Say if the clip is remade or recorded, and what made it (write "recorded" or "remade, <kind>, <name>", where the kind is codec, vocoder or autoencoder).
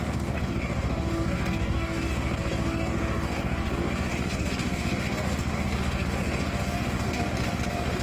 remade, codec, DAC